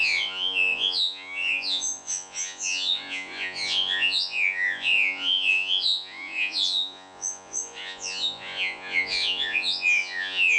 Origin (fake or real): fake